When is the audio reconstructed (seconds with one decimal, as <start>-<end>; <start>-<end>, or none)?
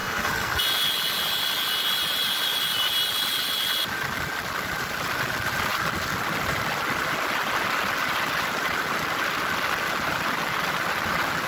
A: 0.0-0.6